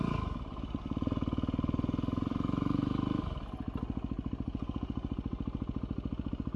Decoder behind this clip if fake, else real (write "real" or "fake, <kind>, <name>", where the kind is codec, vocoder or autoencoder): real